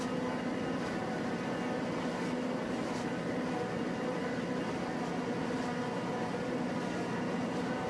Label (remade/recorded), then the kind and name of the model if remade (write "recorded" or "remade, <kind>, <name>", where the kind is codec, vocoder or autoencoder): recorded